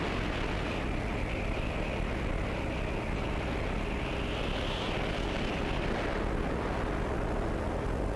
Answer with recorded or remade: recorded